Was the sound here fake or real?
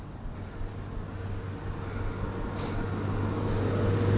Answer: real